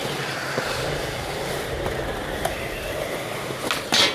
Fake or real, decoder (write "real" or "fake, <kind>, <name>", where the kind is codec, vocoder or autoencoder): real